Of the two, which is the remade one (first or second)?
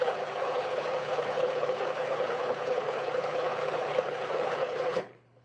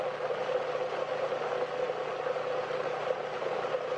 first